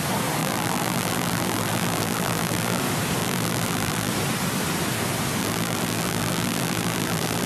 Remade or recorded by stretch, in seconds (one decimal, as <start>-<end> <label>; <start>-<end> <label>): 0.0-0.4 recorded; 0.4-2.8 remade; 2.8-3.2 recorded; 3.2-4.1 remade; 4.1-5.4 recorded; 5.4-7.5 remade